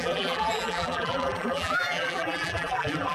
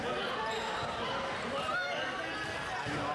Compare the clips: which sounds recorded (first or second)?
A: second